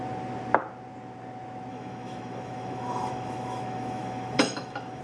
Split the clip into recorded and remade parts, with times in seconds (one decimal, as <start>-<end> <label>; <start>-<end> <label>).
0.0-1.7 recorded; 1.7-5.0 remade

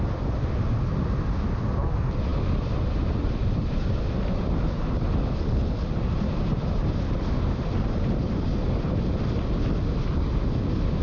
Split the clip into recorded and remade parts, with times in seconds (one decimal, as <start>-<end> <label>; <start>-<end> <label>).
0.0-11.0 recorded

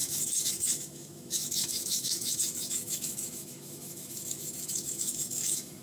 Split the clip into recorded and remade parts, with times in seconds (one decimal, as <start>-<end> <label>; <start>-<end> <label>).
0.0-5.8 remade

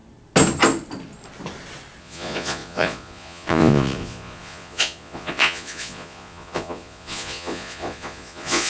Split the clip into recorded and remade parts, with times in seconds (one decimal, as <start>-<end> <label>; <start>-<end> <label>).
0.0-2.0 recorded; 2.0-8.7 remade